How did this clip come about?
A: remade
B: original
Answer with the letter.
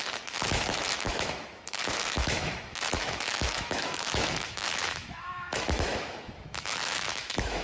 A